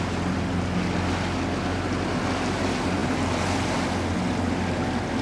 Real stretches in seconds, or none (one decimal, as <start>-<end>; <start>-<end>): 0.0-5.2